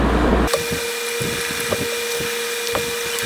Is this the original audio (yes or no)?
yes